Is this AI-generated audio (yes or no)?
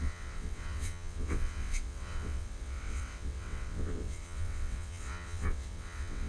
yes